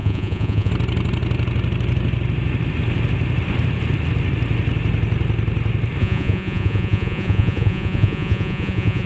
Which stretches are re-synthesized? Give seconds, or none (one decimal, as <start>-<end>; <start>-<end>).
0.0-0.7; 6.0-9.1